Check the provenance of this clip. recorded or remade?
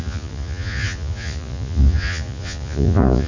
remade